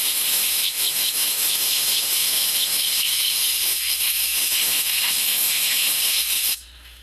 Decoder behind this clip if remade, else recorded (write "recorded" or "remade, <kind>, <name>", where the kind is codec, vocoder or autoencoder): remade, autoencoder, DAC-VAE